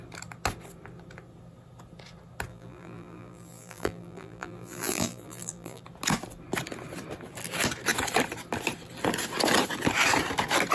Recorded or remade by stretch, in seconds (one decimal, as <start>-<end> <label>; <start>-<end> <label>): 0.0-2.5 recorded; 2.5-5.8 remade; 5.8-10.7 recorded